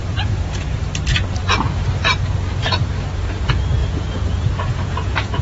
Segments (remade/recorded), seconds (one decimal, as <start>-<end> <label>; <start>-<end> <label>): 0.0-0.8 remade; 0.8-3.8 recorded; 3.8-5.4 remade

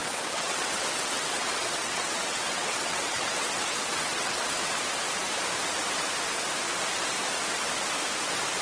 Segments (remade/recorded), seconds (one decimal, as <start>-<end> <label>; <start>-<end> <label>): 0.0-4.8 remade; 4.8-8.6 recorded

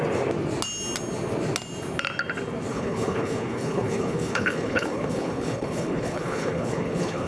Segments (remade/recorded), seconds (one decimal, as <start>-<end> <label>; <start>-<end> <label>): 0.0-2.7 recorded; 2.7-7.3 remade

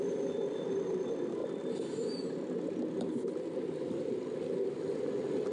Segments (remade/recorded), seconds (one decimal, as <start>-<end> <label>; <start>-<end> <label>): 0.0-5.5 recorded

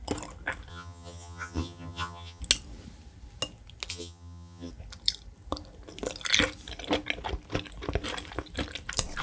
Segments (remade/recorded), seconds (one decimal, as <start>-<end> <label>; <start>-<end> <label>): 0.0-0.7 recorded; 0.7-2.4 remade; 2.4-3.9 recorded; 3.9-4.7 remade; 4.7-9.2 recorded

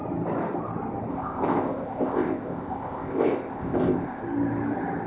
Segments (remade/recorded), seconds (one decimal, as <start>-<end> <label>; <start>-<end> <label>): 0.0-1.1 recorded; 1.1-4.2 remade; 4.2-5.1 recorded

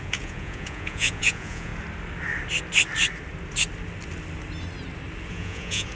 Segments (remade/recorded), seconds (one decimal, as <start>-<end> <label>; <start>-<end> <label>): 0.0-1.7 remade; 1.7-5.3 recorded; 5.3-6.0 remade